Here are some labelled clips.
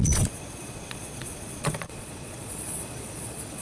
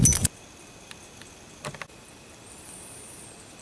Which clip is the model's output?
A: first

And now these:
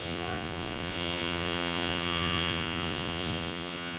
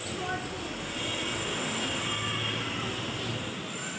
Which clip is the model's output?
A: first